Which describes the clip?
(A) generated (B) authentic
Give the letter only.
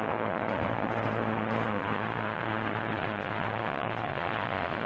A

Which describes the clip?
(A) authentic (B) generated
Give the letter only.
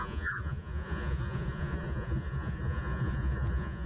B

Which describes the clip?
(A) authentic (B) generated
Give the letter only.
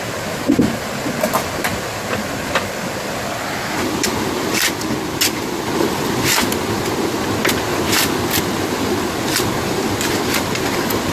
A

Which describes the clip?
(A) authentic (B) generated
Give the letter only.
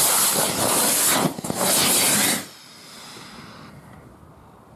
A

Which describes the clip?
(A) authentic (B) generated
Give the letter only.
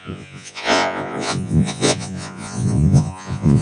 B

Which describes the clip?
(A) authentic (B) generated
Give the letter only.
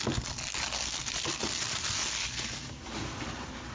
A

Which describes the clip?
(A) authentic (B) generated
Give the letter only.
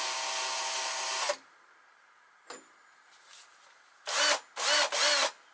A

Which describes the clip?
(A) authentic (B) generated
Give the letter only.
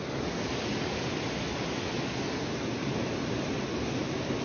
A